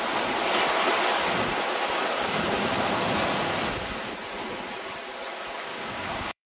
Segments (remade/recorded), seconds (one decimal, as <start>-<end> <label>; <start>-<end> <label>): 0.0-5.7 recorded; 5.7-6.5 remade